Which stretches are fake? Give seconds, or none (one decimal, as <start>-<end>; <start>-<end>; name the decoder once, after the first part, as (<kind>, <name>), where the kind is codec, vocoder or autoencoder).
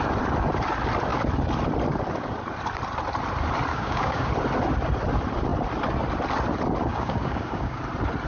3.7-4.3 (codec, DAC); 6.9-7.8